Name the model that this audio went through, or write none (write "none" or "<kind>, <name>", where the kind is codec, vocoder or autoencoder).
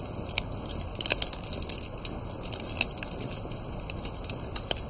none